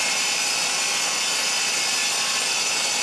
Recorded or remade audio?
recorded